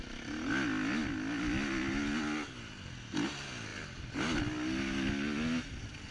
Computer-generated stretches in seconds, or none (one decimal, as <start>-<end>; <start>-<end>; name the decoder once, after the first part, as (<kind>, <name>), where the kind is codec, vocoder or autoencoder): none